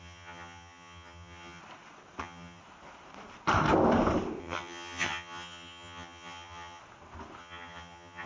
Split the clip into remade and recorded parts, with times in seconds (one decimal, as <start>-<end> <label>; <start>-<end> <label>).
0.0-1.6 remade; 1.6-2.2 recorded; 2.2-2.6 remade; 2.6-4.4 recorded; 4.4-6.8 remade; 6.8-7.4 recorded; 7.4-8.3 remade